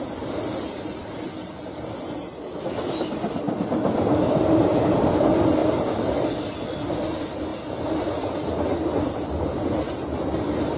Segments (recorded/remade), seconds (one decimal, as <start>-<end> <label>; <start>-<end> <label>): 0.0-10.8 recorded